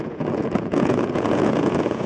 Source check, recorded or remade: remade